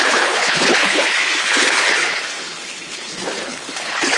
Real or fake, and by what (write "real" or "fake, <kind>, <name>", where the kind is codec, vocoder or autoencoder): fake, codec, HILCodec